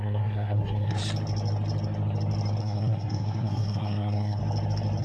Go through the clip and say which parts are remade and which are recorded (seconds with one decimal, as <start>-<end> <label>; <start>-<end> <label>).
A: 0.0-1.0 remade; 1.0-2.6 recorded; 2.6-4.4 remade; 4.4-5.0 recorded